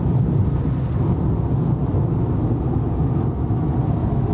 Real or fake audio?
real